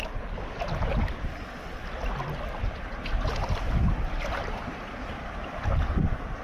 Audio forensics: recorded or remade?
recorded